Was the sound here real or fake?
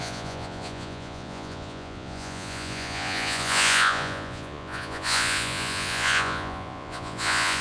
fake